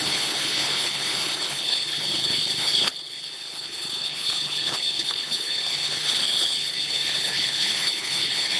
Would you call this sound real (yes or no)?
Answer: no